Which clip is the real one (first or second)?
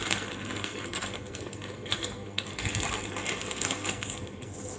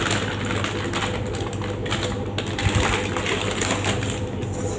second